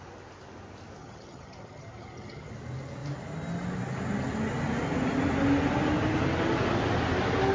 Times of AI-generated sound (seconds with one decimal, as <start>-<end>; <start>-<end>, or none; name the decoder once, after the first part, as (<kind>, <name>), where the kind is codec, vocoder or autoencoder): 1.0-2.5 (vocoder, HiFi-GAN)